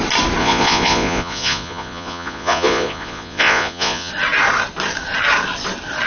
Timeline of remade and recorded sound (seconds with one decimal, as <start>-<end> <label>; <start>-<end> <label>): 0.0-0.4 recorded; 0.4-4.1 remade; 4.1-6.1 recorded